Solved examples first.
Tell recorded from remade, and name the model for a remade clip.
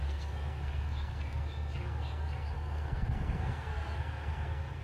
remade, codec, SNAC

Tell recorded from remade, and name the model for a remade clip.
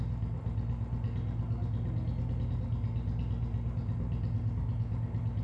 recorded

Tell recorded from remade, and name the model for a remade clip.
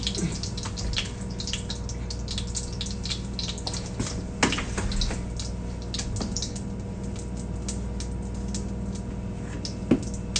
recorded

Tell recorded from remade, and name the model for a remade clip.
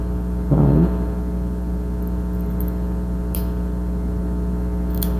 recorded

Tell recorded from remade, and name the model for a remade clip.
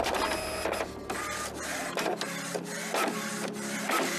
recorded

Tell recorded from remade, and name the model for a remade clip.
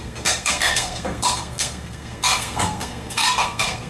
remade, codec, SNAC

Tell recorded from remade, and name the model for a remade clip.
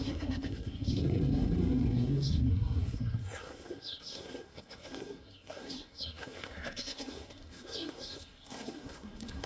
remade, codec, SNAC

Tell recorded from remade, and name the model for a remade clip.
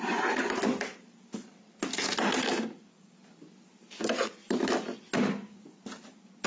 recorded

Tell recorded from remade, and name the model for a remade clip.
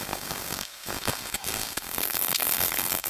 remade, codec, SNAC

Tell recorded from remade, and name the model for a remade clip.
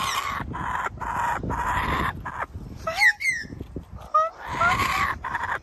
recorded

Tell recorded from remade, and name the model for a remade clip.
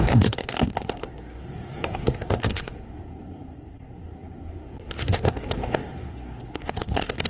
remade, codec, SNAC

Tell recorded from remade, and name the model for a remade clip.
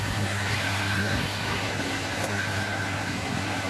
remade, codec, SNAC